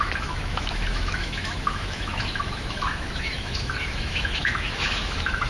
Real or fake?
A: fake